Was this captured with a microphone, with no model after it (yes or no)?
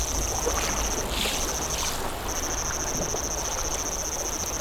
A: yes